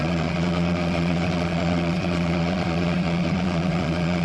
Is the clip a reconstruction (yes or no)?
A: yes